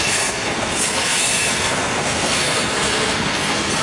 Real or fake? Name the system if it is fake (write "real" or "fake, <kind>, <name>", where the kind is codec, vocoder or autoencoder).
fake, codec, SNAC